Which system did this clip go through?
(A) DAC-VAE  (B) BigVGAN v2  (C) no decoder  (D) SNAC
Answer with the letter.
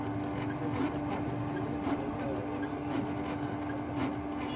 C